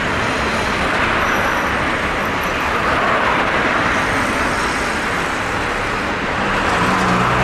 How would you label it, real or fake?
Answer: real